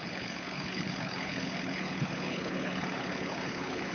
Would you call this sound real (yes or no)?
no